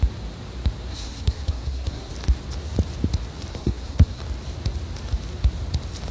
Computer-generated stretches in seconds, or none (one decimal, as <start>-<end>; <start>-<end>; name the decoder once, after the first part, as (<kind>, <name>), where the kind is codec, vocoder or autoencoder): 0.9-2.1 (codec, SNAC); 3.5-4.2